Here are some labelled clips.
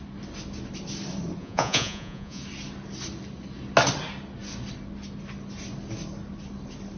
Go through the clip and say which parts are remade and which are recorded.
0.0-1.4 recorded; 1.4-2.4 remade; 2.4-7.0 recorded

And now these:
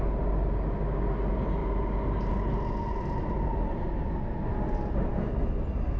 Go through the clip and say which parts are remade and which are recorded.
0.0-6.0 recorded

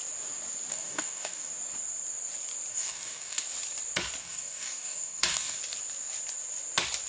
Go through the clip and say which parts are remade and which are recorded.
0.0-0.7 recorded; 0.7-1.5 remade; 1.5-2.7 recorded; 2.7-3.4 remade; 3.4-4.2 recorded; 4.2-5.6 remade; 5.6-7.1 recorded